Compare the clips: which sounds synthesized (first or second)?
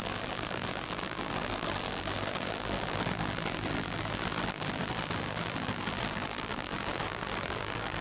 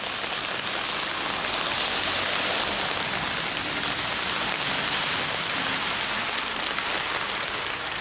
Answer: first